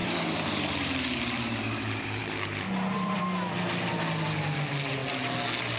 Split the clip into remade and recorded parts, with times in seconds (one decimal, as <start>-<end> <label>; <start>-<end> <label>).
0.0-3.2 remade; 3.2-5.8 recorded